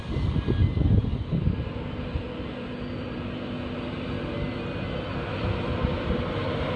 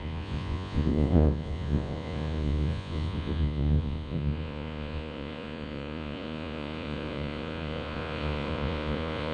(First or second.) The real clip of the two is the first